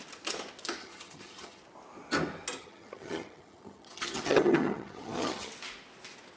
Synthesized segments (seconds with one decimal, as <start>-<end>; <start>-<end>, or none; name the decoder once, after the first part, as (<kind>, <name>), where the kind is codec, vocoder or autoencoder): 0.8-1.6 (vocoder, HiFi-GAN); 2.6-5.5